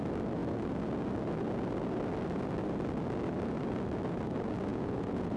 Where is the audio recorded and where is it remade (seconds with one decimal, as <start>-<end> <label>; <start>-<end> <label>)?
0.0-4.7 recorded; 4.7-5.4 remade